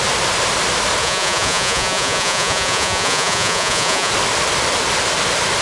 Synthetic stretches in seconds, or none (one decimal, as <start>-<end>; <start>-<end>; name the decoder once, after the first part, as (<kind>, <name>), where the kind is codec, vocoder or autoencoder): 1.0-4.1 (vocoder, Vocos)